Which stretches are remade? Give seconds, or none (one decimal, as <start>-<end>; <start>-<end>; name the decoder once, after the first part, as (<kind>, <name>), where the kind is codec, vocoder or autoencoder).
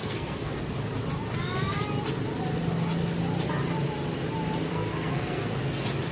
0.0-0.6 (codec, SNAC); 4.7-5.6